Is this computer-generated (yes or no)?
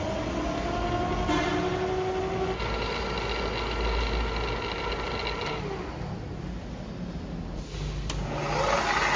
no